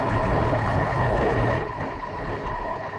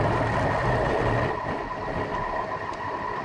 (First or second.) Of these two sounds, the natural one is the second